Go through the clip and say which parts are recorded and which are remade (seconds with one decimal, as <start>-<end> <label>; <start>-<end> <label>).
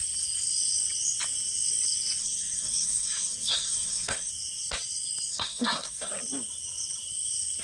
0.0-2.2 recorded; 2.2-4.3 remade; 4.3-5.3 recorded; 5.3-6.1 remade; 6.1-7.6 recorded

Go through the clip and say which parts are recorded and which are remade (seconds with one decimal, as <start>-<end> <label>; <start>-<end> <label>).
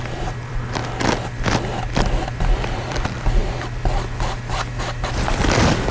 0.0-0.8 remade; 0.8-2.2 recorded; 2.2-3.4 remade; 3.4-4.7 recorded; 4.7-5.9 remade